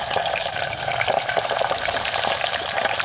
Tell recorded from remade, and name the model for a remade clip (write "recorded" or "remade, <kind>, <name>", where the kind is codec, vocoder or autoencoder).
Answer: remade, vocoder, BigVGAN v2